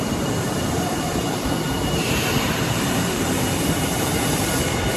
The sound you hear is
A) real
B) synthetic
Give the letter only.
B